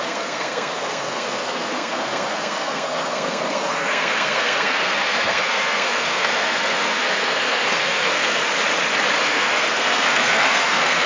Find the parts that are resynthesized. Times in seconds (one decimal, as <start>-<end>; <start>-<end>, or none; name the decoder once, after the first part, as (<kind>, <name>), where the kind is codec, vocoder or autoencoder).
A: 0.0-8.4 (codec, SNAC); 9.2-11.1